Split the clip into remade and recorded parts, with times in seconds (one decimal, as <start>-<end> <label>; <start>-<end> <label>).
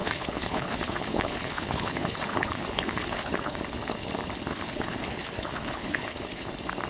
0.0-3.6 remade; 3.6-4.5 recorded; 4.5-6.5 remade; 6.5-6.9 recorded